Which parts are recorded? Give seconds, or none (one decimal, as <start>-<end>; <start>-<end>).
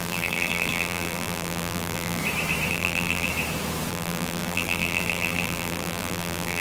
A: 2.2-2.7; 3.3-3.9